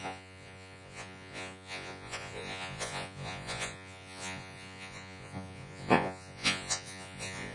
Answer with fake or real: fake